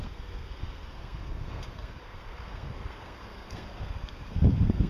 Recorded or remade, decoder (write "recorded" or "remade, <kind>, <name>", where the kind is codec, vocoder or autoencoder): remade, codec, SNAC